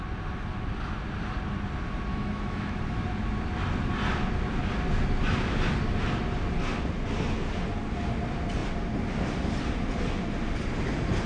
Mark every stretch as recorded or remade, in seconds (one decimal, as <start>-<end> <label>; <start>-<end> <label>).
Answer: 0.0-2.1 recorded; 2.1-2.8 remade; 2.8-11.3 recorded